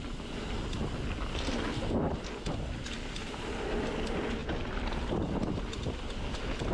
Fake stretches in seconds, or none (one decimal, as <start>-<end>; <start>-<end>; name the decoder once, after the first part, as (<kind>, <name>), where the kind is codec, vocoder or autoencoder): none